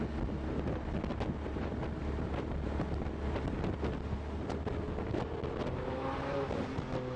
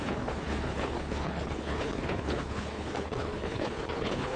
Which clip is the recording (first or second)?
first